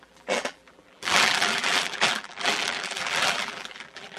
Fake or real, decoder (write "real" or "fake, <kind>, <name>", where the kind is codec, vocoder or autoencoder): fake, vocoder, BigVGAN v2